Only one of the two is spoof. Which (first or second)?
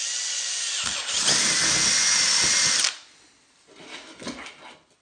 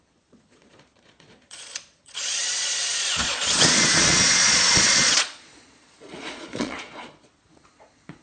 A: second